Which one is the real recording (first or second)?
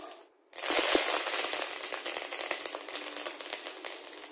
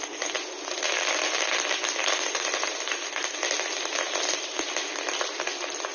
second